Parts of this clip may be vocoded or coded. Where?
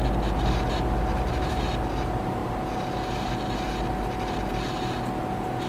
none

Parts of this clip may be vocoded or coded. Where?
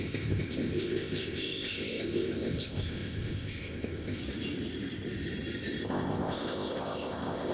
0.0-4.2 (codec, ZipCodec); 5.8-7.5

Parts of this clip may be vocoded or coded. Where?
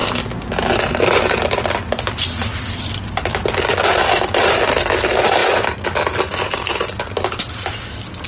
none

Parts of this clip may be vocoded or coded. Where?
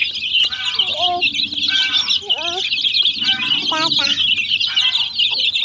none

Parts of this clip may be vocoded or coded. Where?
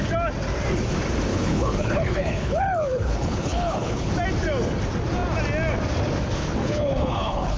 1.3-4.1 (codec, HILCodec); 6.6-7.6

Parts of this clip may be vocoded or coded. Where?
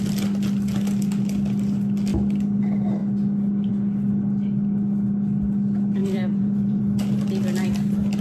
6.0-6.8 (vocoder, BigVGAN v2)